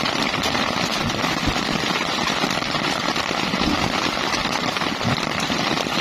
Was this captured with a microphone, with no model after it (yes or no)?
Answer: no